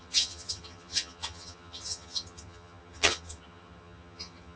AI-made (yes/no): yes